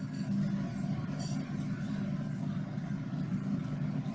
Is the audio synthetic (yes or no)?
no